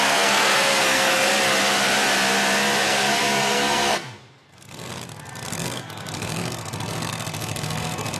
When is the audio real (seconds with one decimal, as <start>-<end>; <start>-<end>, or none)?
1.3-2.8; 4.9-5.5